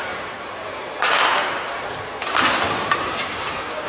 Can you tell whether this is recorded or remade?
recorded